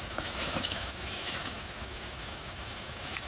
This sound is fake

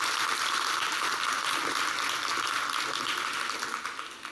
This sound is real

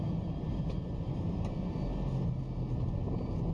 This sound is real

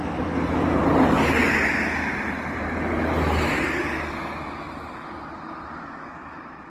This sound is real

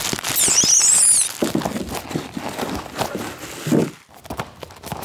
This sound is real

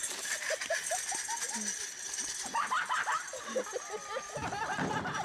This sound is real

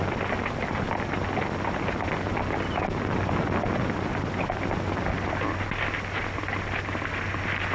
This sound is real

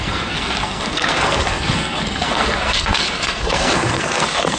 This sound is fake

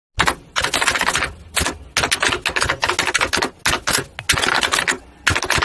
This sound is real